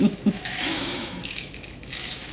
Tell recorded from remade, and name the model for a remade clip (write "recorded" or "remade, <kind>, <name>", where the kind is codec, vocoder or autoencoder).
remade, autoencoder, DAC-VAE